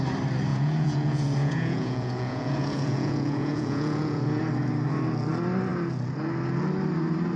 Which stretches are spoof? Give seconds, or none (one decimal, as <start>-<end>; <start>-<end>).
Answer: 0.5-4.4